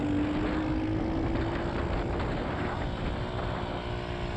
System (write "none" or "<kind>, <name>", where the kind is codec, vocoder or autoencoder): none